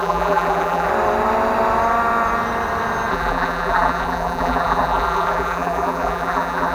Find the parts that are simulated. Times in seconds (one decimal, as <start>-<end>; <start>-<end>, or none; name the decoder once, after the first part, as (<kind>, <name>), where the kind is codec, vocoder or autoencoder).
0.0-0.9 (vocoder, BigVGAN v2); 3.1-6.7